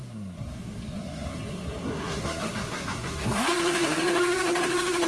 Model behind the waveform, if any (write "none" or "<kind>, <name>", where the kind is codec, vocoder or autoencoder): codec, SNAC